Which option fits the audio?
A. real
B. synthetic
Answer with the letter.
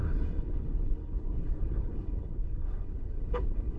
B